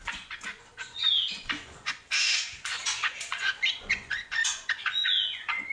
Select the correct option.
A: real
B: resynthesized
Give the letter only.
B